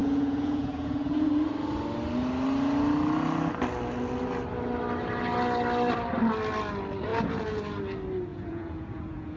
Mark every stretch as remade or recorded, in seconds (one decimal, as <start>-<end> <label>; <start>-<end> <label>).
0.0-1.3 remade; 1.3-7.1 recorded; 7.1-7.6 remade; 7.6-8.3 recorded; 8.3-9.4 remade